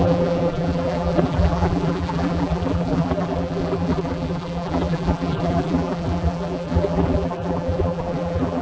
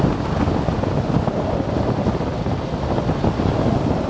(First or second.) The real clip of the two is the second